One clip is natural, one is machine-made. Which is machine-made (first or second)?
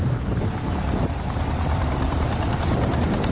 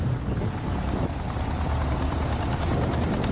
first